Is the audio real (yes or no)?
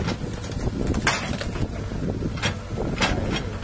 yes